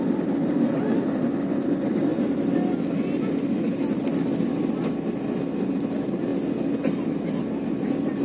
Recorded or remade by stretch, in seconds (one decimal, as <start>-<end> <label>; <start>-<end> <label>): 0.0-8.2 recorded

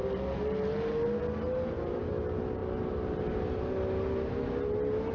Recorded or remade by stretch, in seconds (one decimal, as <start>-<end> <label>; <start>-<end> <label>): 0.0-5.1 recorded

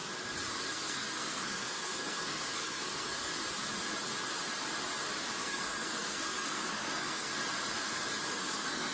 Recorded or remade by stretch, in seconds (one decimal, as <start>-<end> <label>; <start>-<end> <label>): 0.0-0.5 recorded; 0.5-3.3 remade; 3.3-5.4 recorded; 5.4-7.3 remade; 7.3-8.3 recorded; 8.3-8.9 remade

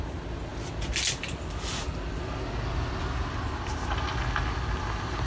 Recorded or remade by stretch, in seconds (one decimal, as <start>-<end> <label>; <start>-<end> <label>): 0.0-5.3 recorded